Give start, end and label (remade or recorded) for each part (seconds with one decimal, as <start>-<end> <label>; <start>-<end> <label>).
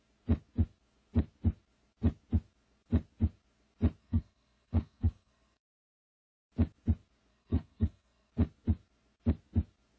0.0-4.0 recorded; 4.0-6.5 remade; 6.5-7.3 recorded; 7.3-8.3 remade; 8.3-10.0 recorded